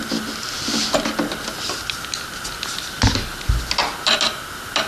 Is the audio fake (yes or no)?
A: no